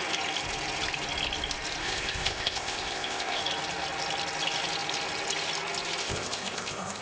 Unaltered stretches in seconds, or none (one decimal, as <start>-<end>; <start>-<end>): 0.0-1.8; 3.4-6.0